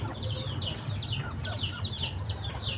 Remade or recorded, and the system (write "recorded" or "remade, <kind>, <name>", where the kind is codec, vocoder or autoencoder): recorded